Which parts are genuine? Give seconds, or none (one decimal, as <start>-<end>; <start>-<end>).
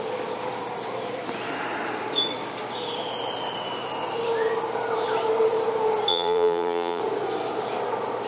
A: 0.0-6.1; 7.0-8.3